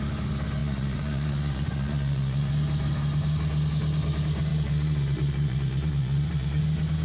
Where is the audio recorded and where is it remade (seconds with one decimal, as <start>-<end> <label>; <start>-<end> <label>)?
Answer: 0.0-0.6 recorded; 0.6-2.5 remade; 2.5-4.5 recorded; 4.5-6.6 remade; 6.6-7.0 recorded